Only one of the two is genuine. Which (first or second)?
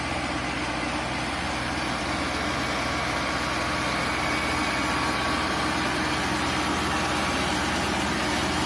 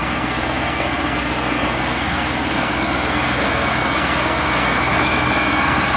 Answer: first